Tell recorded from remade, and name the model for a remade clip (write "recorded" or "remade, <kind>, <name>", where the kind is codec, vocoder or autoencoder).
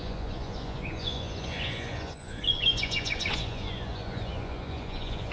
remade, vocoder, Vocos